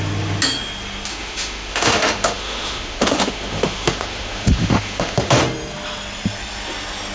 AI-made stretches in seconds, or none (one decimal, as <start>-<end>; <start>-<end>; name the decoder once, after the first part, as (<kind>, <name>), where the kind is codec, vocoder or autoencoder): 1.1-5.4 (autoencoder, DAC-VAE)